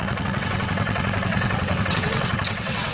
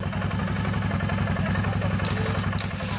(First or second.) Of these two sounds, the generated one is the first